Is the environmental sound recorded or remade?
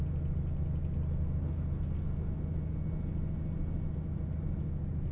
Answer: recorded